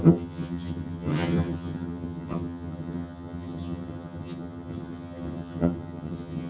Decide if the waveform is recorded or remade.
remade